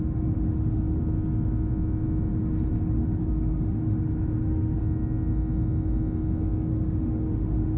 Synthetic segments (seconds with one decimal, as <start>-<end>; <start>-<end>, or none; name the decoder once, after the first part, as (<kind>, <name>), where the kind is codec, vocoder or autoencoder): 0.0-1.0 (autoencoder, DAC-VAE); 2.3-4.8; 6.7-7.8